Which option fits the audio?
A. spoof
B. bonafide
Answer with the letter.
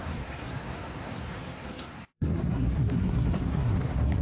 A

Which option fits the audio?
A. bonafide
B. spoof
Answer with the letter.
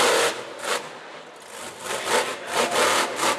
A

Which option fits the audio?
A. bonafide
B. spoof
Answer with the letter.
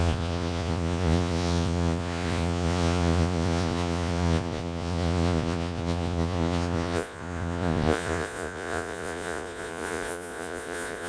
B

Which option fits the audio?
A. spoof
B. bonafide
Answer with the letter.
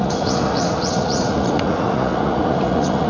A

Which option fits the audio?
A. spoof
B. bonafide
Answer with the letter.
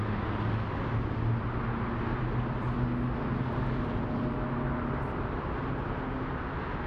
B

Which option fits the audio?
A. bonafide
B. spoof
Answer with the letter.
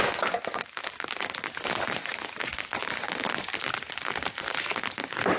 A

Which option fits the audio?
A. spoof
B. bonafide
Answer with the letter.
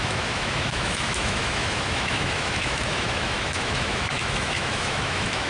A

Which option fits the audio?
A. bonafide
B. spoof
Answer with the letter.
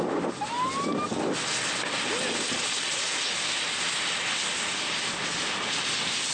A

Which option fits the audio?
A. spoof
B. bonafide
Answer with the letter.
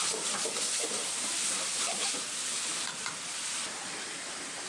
A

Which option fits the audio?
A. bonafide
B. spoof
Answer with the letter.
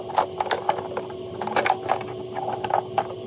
A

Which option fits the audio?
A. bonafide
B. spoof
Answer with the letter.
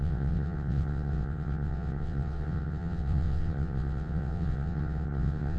B